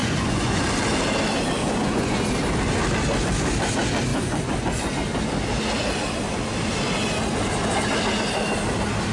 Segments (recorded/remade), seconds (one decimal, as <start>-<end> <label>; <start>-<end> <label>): 0.0-0.6 remade; 0.6-1.6 recorded; 1.6-2.3 remade; 2.3-4.1 recorded; 4.1-4.9 remade; 4.9-9.1 recorded